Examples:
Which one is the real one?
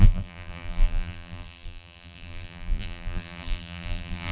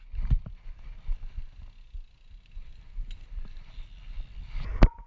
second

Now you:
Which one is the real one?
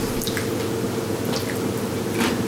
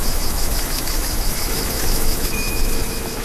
first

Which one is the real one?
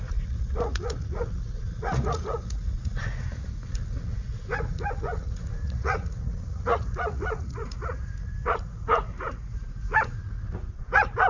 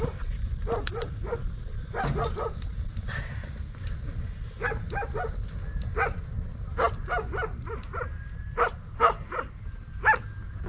second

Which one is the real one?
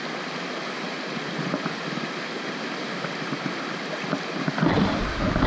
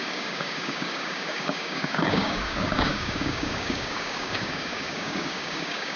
first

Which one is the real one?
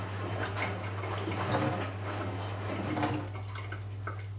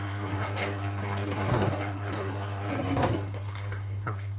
first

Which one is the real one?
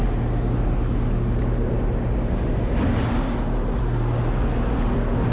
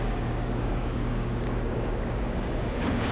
first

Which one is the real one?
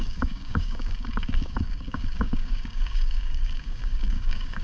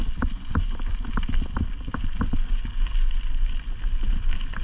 second